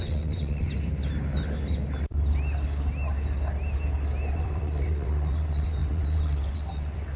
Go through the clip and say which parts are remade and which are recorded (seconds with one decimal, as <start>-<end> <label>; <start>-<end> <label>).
0.0-0.7 remade; 0.7-4.3 recorded; 4.3-7.2 remade